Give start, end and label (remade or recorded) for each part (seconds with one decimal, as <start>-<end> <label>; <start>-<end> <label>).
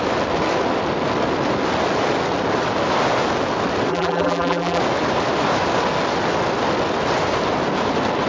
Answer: 0.0-3.9 recorded; 3.9-4.8 remade; 4.8-8.3 recorded